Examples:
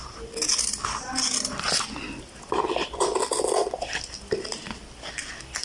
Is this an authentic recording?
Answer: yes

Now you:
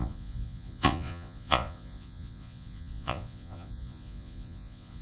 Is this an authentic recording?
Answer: no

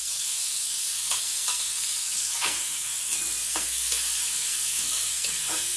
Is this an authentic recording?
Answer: no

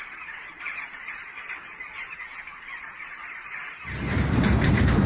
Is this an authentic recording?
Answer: yes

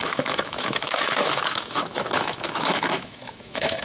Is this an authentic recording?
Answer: no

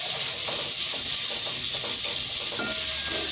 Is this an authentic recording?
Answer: yes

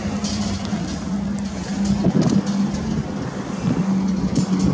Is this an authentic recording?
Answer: yes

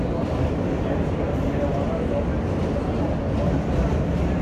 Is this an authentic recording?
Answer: yes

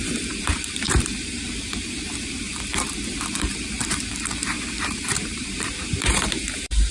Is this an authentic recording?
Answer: no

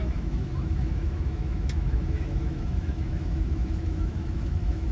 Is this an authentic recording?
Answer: no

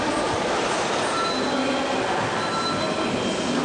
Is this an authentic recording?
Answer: yes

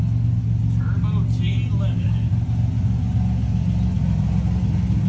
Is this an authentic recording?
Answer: yes